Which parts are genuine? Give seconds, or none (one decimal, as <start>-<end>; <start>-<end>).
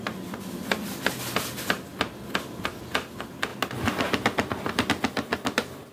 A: 0.0-5.9